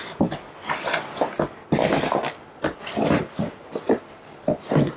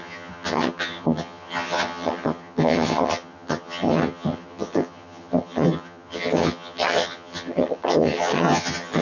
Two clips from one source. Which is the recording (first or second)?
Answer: first